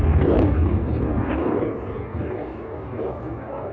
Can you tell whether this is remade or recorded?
remade